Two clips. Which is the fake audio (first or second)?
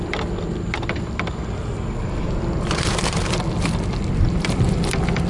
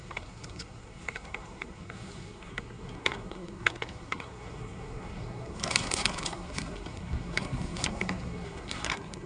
second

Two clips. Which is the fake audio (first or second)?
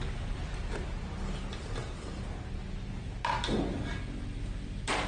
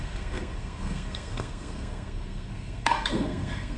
second